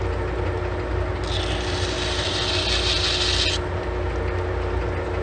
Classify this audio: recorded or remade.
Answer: recorded